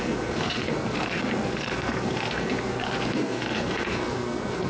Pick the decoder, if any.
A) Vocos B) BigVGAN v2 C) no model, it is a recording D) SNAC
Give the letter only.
D